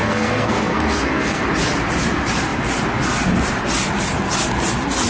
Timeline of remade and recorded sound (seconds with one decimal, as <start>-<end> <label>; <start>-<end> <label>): 0.0-1.4 remade; 1.4-5.1 recorded

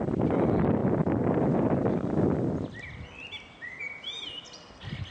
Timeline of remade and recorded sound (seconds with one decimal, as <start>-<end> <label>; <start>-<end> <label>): 0.0-5.1 recorded